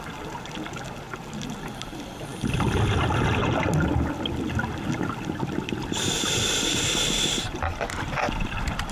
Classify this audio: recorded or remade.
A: recorded